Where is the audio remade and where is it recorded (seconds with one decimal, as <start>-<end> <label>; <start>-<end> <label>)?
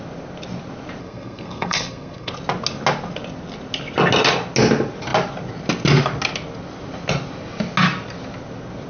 0.0-1.0 recorded; 1.0-2.3 remade; 2.3-8.9 recorded